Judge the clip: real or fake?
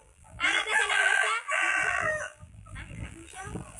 fake